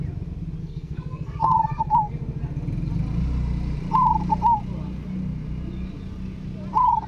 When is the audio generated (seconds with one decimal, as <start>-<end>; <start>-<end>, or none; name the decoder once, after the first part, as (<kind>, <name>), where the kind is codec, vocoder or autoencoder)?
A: 0.6-2.1 (codec, SNAC)